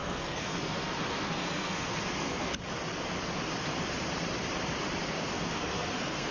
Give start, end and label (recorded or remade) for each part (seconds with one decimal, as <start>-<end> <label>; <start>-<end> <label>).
0.0-2.5 remade; 2.5-5.3 recorded; 5.3-6.3 remade